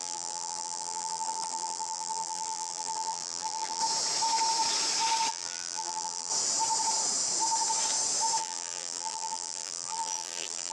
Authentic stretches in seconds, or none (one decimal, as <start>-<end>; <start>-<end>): 3.8-5.3; 6.3-8.4